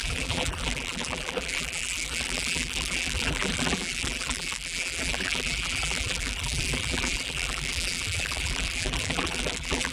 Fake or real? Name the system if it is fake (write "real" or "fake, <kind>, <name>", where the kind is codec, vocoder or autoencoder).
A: fake, vocoder, BigVGAN v2